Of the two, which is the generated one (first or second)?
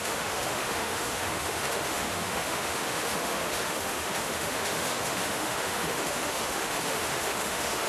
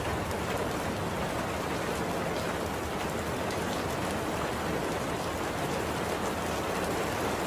first